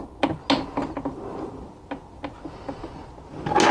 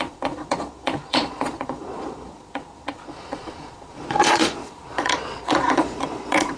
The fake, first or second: second